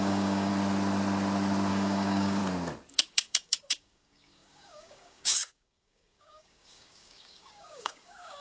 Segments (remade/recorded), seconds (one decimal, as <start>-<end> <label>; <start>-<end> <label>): 0.0-0.5 remade; 0.5-1.7 recorded; 1.7-2.4 remade; 2.4-2.9 recorded; 2.9-8.4 remade